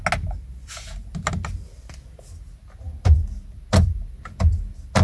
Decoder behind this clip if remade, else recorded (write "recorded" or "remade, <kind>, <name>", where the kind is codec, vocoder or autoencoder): recorded